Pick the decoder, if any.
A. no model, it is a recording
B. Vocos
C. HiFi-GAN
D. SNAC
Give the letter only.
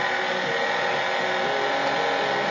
A